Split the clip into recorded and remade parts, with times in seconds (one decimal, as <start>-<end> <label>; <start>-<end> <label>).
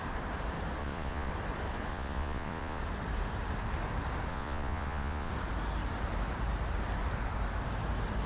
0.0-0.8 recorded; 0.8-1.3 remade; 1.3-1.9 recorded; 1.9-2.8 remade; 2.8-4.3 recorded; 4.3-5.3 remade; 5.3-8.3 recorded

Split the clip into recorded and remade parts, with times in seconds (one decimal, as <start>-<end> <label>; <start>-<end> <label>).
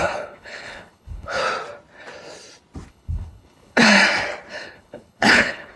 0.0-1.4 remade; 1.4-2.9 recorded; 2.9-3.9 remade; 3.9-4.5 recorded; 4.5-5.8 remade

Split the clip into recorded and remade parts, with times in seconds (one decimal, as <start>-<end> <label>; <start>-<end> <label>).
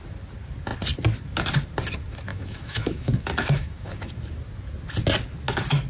0.0-2.3 recorded; 2.3-4.1 remade; 4.1-5.9 recorded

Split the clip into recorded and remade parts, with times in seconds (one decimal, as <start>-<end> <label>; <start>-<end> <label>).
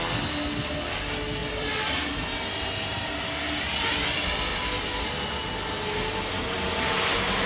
0.0-1.4 recorded; 1.4-4.0 remade; 4.0-4.5 recorded; 4.5-5.1 remade; 5.1-6.7 recorded; 6.7-7.5 remade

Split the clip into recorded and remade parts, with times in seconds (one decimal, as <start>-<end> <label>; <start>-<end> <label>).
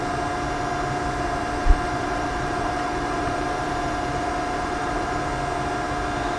0.0-1.6 recorded; 1.6-5.2 remade; 5.2-6.4 recorded